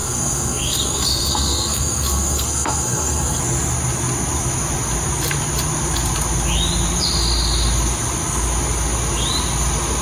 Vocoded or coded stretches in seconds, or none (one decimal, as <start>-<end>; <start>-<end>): 0.0-3.4